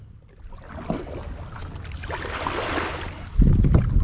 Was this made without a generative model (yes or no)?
yes